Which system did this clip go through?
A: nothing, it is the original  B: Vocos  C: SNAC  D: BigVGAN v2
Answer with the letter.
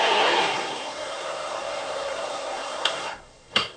C